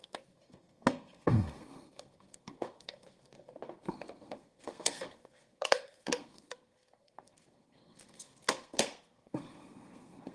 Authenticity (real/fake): fake